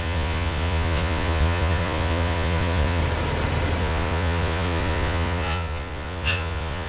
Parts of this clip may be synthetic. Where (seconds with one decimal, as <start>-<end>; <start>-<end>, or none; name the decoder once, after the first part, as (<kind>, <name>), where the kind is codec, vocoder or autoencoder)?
0.0-3.0 (vocoder, Vocos); 3.8-6.9